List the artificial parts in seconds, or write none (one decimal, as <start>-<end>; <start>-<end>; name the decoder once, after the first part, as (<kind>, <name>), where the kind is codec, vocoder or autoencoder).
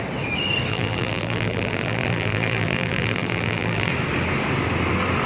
0.7-3.9 (vocoder, BigVGAN v2)